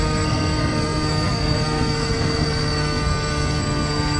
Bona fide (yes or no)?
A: no